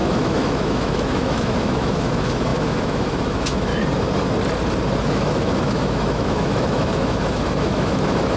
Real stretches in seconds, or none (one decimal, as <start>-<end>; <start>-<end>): 3.7-5.0